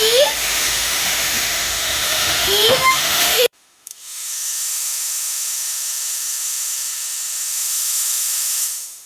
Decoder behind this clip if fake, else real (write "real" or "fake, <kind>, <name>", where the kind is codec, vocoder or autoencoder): fake, autoencoder, DAC-VAE